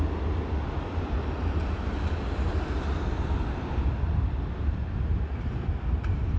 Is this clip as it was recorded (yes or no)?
yes